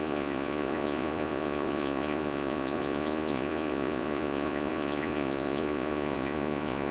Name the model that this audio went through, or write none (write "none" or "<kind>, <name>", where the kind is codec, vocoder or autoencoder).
vocoder, Vocos